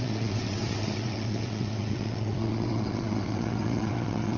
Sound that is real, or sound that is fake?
fake